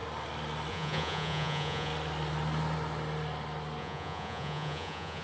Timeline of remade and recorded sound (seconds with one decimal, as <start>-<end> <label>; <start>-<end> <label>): 0.0-0.7 recorded; 0.7-1.9 remade; 1.9-3.8 recorded; 3.8-5.2 remade